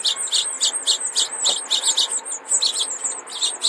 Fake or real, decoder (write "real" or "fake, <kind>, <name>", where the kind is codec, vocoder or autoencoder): real